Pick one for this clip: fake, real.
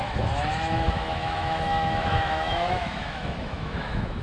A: fake